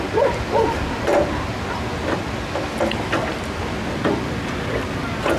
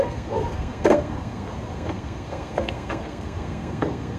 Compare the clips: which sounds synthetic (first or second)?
second